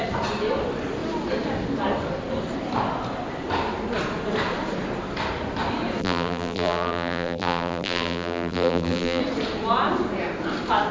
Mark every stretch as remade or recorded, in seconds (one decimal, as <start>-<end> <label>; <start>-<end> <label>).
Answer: 0.0-6.0 recorded; 6.0-9.2 remade; 9.2-10.9 recorded